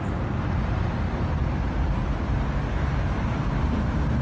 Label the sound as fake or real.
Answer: real